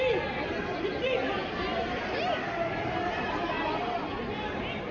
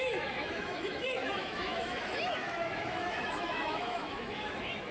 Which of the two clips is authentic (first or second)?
first